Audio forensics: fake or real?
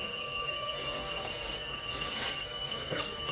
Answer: fake